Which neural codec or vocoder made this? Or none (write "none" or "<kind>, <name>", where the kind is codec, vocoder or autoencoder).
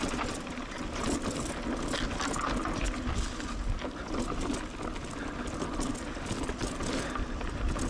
none